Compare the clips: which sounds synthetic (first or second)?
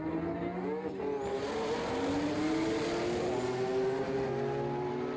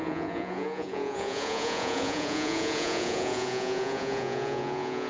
second